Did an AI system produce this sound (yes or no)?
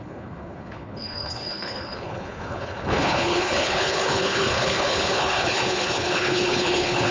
yes